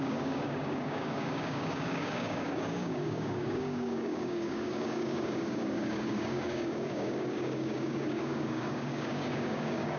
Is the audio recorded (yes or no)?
no